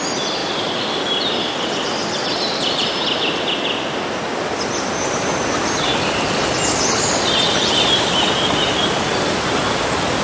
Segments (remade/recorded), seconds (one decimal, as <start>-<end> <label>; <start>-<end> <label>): 0.0-10.2 recorded